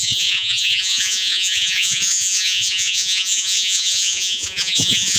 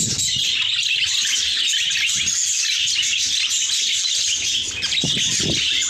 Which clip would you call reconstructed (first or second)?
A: first